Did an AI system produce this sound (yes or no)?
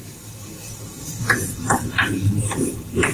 yes